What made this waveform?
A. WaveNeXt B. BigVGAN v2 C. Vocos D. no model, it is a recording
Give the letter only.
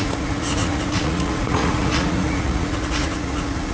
C